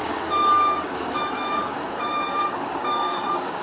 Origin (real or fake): fake